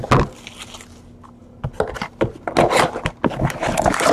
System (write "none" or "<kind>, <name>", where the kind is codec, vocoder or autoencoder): none